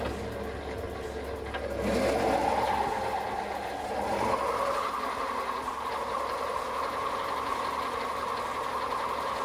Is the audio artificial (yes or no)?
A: no